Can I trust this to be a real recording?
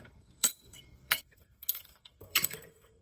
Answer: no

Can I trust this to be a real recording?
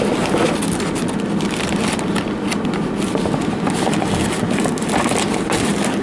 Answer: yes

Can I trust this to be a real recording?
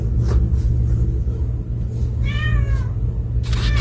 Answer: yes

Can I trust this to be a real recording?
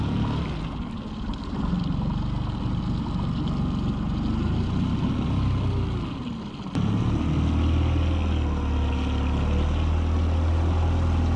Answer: yes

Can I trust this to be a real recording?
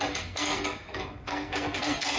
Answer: no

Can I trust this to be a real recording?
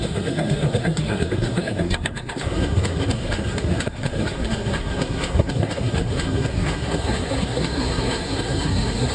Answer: no